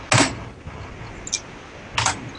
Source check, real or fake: real